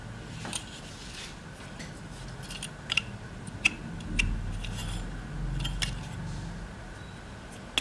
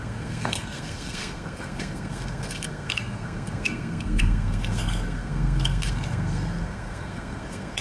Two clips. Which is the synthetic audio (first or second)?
second